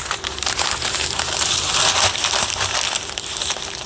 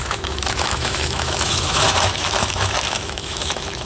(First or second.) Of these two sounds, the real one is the first